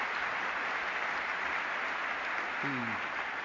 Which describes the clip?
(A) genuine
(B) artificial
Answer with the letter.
A